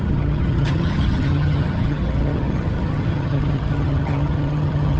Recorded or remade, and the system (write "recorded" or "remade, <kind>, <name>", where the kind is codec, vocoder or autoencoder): remade, vocoder, HiFi-GAN